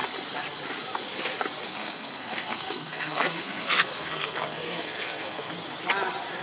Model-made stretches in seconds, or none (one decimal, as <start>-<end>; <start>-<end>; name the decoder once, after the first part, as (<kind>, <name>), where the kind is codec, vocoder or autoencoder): 1.7-5.5 (codec, SNAC)